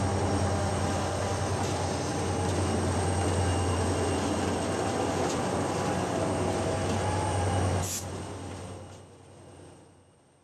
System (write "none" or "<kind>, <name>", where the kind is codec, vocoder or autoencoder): none